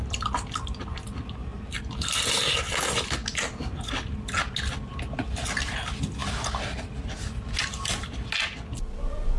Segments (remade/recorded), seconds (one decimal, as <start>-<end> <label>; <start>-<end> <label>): 0.0-9.4 recorded